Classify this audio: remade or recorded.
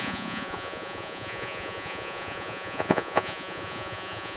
remade